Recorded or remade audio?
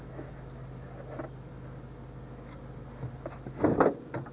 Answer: recorded